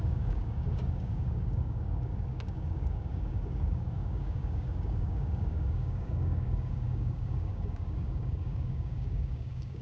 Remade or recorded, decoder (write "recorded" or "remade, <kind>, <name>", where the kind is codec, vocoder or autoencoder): remade, codec, DAC